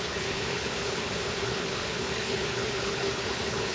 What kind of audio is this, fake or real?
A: fake